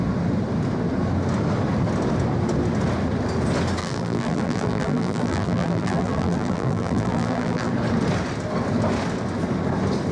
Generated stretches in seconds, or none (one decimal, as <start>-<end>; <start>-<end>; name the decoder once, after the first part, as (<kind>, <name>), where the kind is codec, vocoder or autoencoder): 3.8-7.7 (vocoder, BigVGAN v2)